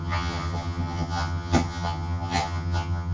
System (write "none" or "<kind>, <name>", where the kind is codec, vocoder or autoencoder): vocoder, HiFi-GAN